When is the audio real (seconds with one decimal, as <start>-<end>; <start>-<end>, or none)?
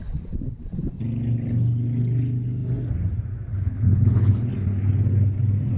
0.0-3.5; 4.5-5.8